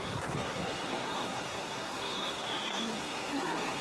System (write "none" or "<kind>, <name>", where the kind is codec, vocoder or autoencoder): codec, SNAC